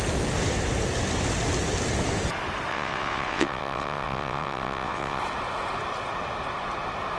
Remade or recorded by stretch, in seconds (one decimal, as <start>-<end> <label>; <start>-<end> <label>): 0.0-2.7 recorded; 2.7-5.2 remade; 5.2-7.2 recorded